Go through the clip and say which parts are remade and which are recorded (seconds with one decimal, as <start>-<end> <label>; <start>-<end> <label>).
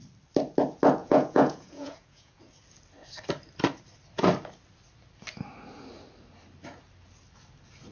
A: 0.0-1.0 recorded; 1.0-2.4 remade; 2.4-7.9 recorded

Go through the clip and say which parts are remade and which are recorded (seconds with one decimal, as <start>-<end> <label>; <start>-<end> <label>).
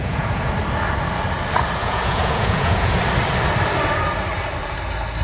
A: 0.0-0.5 remade; 0.5-1.8 recorded; 1.8-3.0 remade; 3.0-5.2 recorded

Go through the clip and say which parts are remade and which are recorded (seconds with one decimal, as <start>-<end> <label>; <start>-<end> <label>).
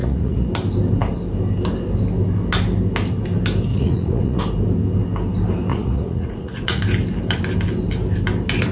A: 0.0-0.5 remade; 0.5-3.7 recorded; 3.7-4.4 remade; 4.4-5.7 recorded; 5.7-6.8 remade; 6.8-8.7 recorded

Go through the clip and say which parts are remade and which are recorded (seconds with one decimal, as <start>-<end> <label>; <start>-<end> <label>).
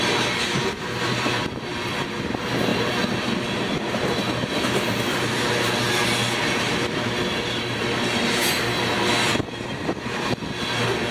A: 0.0-11.1 recorded